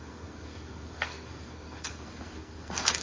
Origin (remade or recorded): remade